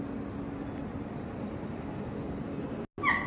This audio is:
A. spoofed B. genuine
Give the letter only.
B